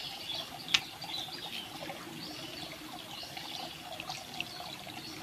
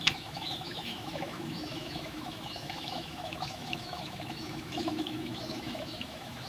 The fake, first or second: second